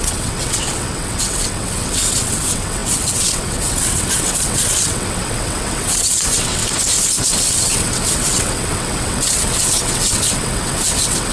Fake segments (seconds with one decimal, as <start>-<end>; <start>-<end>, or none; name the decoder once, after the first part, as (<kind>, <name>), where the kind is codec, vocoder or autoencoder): 0.0-6.6 (vocoder, WaveNeXt); 7.2-11.3